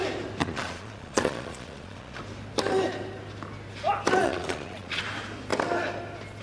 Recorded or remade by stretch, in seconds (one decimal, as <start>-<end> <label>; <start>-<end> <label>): 0.0-0.4 recorded; 0.4-2.2 remade; 2.2-4.2 recorded; 4.2-5.0 remade; 5.0-6.4 recorded